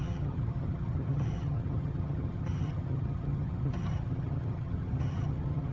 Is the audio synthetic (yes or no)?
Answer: yes